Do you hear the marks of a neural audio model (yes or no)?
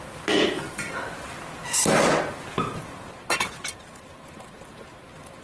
no